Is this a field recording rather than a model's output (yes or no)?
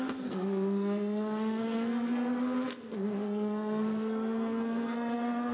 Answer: no